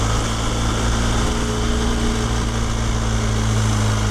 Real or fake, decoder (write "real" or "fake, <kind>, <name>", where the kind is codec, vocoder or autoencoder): real